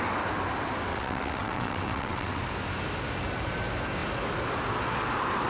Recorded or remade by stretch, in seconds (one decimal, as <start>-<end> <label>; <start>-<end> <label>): 0.0-0.9 recorded; 0.9-2.4 remade; 2.4-5.5 recorded